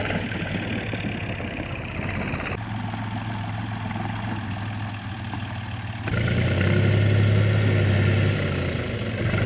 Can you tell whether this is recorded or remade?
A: recorded